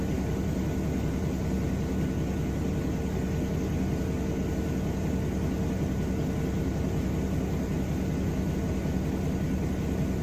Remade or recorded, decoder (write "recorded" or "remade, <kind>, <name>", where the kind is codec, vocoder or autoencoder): recorded